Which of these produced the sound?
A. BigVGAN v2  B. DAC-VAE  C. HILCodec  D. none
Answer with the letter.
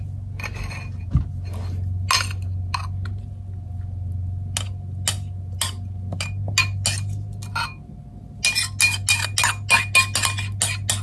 D